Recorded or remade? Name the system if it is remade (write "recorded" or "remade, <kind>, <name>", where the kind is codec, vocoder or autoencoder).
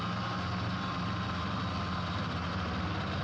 recorded